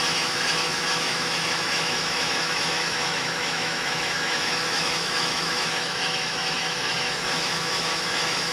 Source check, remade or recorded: remade